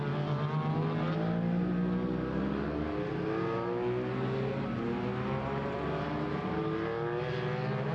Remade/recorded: recorded